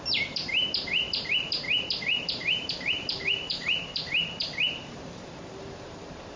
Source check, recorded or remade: remade